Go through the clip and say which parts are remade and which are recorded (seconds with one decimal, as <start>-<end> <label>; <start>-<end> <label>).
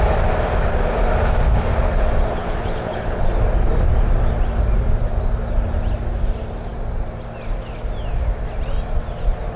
0.0-2.4 recorded; 2.4-3.3 remade; 3.3-9.6 recorded